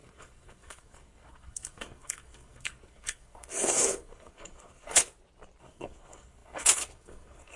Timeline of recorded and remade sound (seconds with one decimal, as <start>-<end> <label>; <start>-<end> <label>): 0.0-5.0 remade; 5.0-5.6 recorded; 5.6-7.6 remade